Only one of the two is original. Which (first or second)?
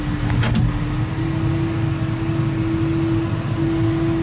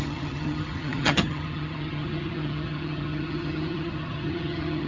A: first